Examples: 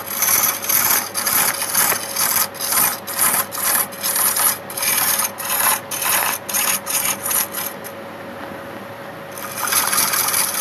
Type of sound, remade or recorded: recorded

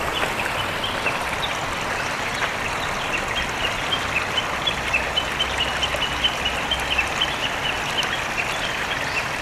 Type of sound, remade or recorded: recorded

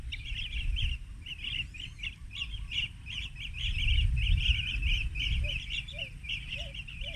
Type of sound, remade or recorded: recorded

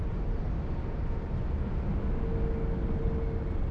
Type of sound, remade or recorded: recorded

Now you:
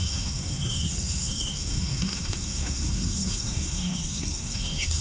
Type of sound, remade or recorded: remade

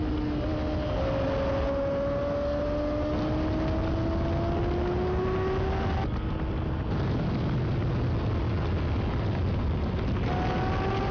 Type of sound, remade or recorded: recorded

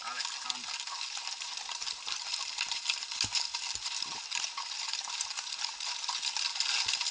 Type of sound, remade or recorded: recorded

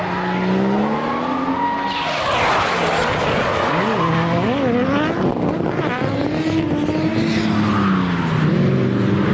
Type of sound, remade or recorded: recorded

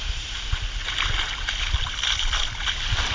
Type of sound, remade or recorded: recorded